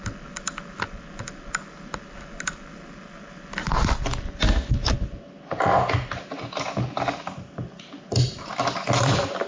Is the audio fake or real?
real